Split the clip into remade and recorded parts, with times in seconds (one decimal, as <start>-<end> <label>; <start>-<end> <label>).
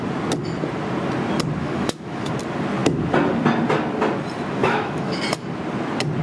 0.0-1.6 recorded; 1.6-2.3 remade; 2.3-4.6 recorded; 4.6-5.2 remade; 5.2-6.2 recorded